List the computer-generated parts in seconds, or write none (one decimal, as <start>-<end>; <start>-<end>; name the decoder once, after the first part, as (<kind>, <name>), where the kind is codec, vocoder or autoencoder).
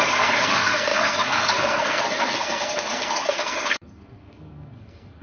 0.0-5.2 (codec, SNAC)